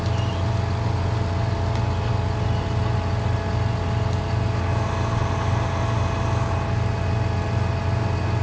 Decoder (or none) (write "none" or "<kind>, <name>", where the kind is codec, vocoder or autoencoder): none